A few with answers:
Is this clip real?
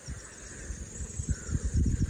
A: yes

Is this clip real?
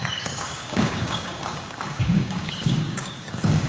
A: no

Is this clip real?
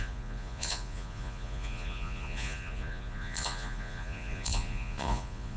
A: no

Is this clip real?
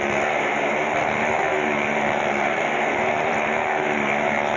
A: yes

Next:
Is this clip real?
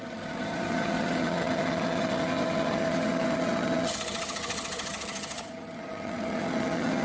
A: no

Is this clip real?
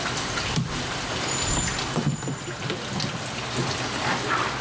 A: yes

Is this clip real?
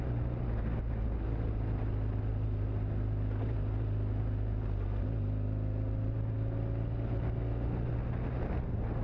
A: yes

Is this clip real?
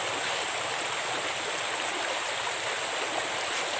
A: yes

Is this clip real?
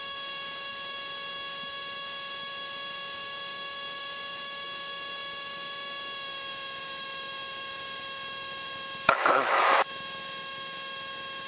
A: no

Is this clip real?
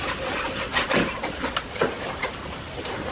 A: yes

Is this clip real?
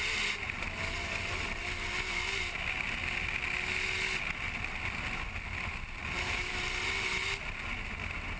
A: yes